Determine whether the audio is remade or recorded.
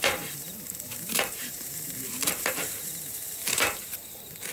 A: remade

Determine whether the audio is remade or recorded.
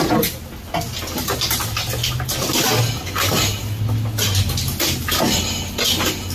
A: recorded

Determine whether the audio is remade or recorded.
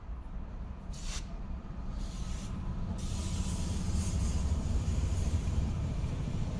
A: remade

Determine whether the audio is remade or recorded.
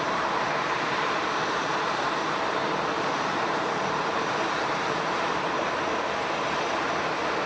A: remade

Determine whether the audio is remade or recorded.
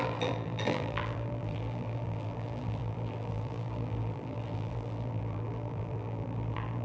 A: remade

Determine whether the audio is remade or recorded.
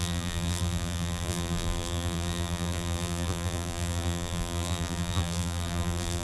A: remade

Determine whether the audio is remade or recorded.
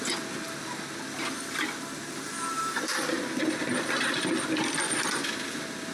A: recorded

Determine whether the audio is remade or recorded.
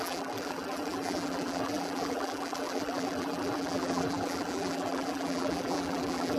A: remade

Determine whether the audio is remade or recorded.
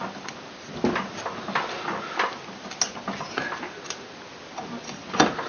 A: recorded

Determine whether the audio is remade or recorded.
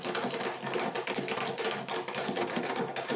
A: recorded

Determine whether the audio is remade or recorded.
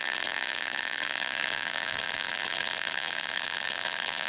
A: remade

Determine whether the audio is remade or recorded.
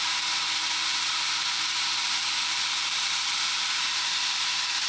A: remade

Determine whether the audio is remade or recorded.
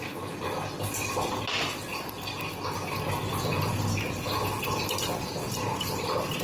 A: recorded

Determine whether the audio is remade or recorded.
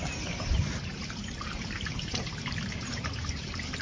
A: remade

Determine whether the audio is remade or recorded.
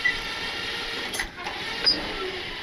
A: remade